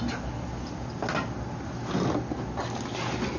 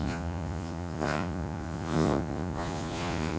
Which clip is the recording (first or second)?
first